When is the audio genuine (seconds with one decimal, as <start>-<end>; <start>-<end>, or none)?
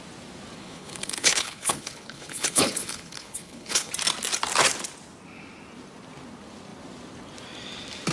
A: 0.0-0.6; 3.9-8.1